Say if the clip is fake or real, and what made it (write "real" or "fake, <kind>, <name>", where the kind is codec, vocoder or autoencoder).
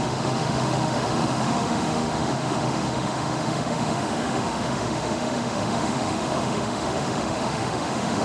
fake, autoencoder, DAC-VAE